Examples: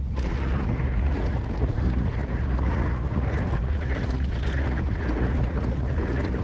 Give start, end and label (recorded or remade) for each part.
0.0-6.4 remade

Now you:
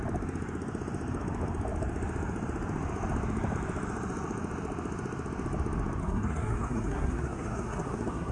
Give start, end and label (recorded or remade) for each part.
0.0-6.0 recorded; 6.0-8.3 remade

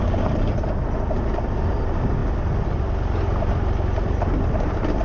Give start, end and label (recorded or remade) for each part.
0.0-5.0 recorded